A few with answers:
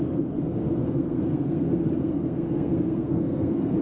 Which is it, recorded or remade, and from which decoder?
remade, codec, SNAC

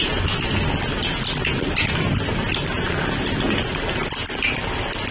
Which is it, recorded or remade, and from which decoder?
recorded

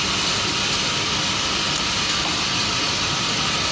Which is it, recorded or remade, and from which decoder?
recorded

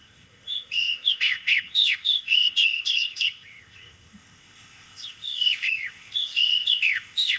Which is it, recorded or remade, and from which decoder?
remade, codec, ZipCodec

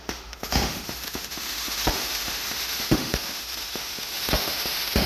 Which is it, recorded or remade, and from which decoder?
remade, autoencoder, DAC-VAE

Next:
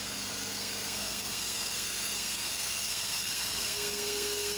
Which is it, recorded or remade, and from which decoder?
remade, codec, SNAC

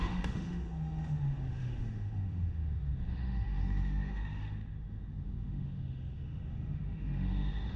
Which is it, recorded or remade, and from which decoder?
remade, autoencoder, DAC-VAE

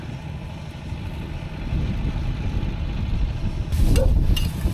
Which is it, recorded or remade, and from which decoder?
recorded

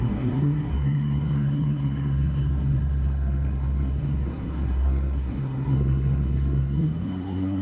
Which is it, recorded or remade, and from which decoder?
remade, codec, SNAC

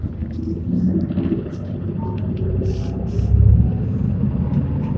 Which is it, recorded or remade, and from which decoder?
recorded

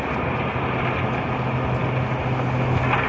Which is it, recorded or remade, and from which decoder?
recorded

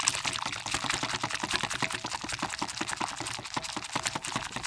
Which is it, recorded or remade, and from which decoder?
recorded